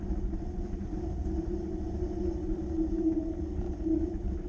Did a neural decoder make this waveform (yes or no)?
no